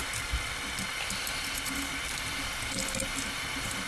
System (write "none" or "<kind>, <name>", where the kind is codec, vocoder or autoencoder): none